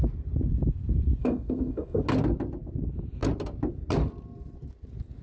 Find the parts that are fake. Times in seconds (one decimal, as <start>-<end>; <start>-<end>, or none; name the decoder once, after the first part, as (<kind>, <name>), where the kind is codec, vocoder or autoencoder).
1.2-2.0 (codec, SNAC)